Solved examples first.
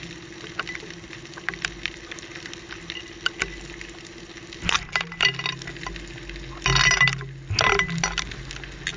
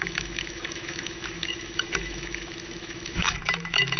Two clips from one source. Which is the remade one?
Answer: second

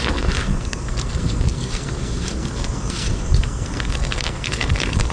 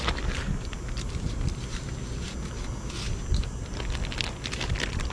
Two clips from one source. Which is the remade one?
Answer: first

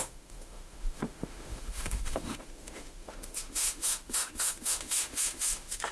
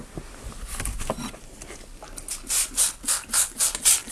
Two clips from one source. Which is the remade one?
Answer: first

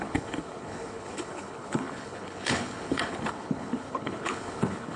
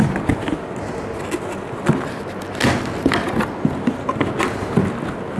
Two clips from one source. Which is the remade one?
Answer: first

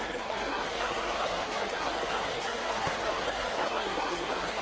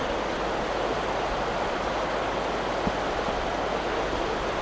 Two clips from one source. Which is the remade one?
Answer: first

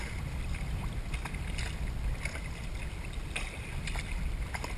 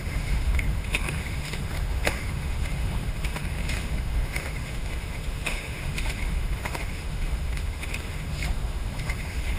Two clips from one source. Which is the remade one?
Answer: second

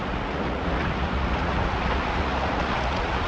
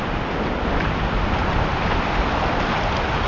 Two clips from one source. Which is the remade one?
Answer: first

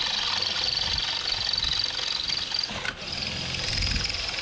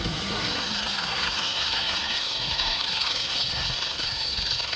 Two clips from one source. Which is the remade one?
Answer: second